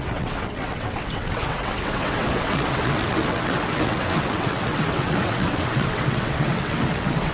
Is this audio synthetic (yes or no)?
yes